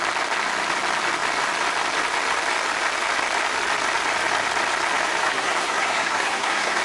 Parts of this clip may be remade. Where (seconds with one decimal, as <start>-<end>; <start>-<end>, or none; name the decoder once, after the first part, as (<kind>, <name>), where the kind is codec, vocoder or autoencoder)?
5.2-6.8 (codec, SNAC)